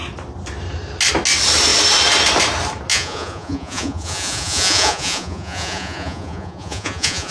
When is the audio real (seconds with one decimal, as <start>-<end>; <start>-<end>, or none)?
0.0-2.9